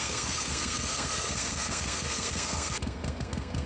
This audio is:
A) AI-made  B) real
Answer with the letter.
A